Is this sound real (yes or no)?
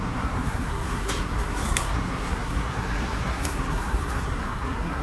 no